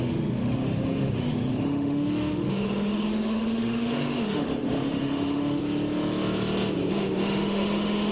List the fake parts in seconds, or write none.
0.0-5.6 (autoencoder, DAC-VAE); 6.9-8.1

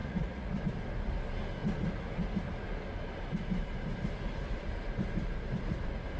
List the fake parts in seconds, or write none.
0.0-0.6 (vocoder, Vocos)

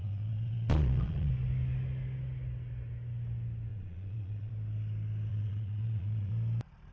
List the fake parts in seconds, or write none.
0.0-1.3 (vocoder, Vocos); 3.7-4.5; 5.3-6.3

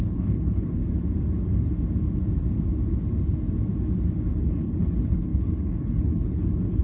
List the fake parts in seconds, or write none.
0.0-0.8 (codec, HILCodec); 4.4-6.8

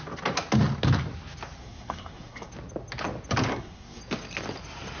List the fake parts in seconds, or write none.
1.6-2.5 (codec, SNAC); 3.5-4.0

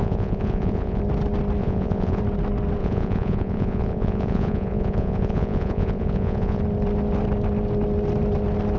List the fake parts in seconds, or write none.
0.0-1.0 (vocoder, Vocos); 1.6-2.2; 2.8-6.6

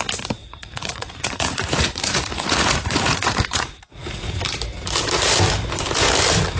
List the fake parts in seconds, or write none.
0.4-4.4 (vocoder, Vocos)

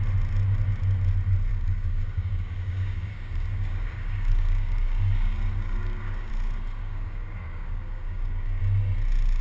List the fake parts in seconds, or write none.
1.5-6.3 (codec, DAC); 6.8-8.6